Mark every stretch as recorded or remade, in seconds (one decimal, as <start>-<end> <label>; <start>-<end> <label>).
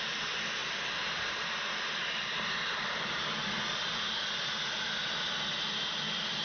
0.0-6.4 recorded